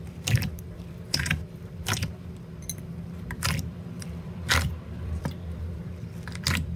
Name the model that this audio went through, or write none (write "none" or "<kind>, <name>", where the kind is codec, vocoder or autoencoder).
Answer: vocoder, BigVGAN v2